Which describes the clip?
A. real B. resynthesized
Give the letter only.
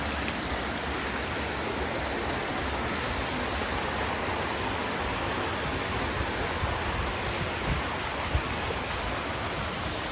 A